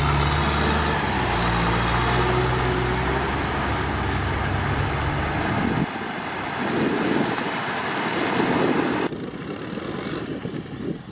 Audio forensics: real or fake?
real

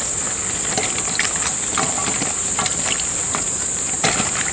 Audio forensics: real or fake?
real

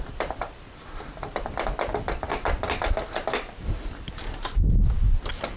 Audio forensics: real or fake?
real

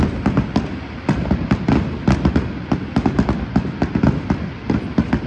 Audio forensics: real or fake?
real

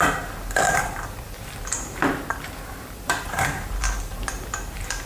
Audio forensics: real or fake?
fake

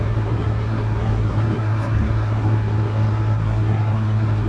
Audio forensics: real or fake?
fake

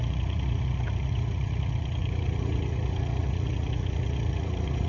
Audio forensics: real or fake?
fake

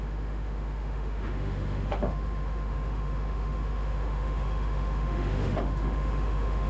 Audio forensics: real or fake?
fake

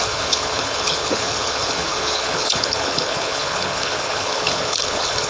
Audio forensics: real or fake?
fake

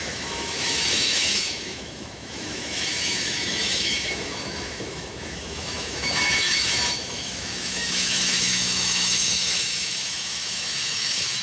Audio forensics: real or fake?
fake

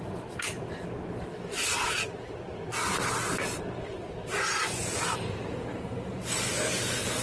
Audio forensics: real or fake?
real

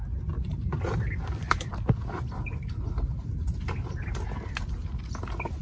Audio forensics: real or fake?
real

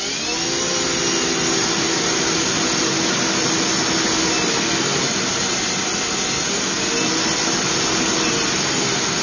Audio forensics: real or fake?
real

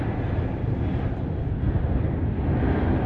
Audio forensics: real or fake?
real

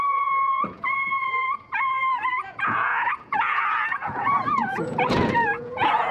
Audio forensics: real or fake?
fake